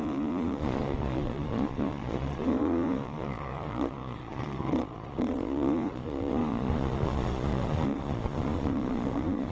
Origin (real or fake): fake